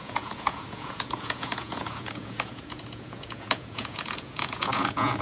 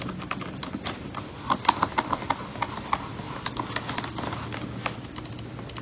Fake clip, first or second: first